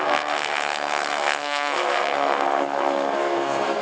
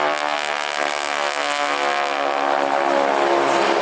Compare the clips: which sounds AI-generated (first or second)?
first